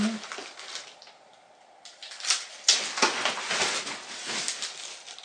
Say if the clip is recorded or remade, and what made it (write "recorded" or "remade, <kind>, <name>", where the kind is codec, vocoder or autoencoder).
recorded